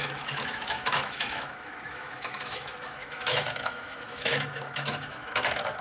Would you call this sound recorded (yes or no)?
no